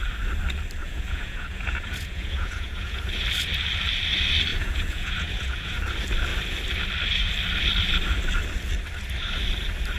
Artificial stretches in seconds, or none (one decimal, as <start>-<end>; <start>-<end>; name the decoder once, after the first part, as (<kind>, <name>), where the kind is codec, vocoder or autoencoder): 0.8-3.1 (vocoder, Vocos); 4.5-5.8